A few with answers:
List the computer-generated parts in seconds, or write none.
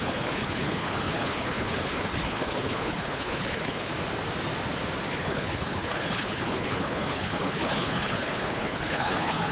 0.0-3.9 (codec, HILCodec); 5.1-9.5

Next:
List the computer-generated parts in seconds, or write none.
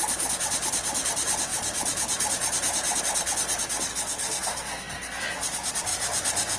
3.9-5.2 (codec, SNAC)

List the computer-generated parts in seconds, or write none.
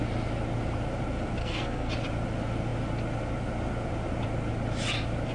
1.4-1.9 (codec, SNAC)